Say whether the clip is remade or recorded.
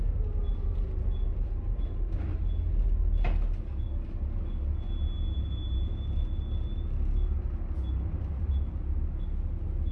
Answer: recorded